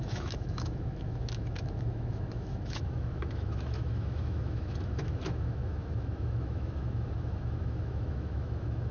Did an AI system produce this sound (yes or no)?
yes